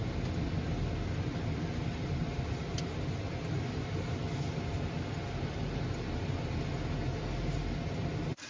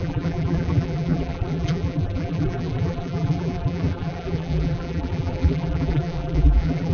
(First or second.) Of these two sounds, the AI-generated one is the second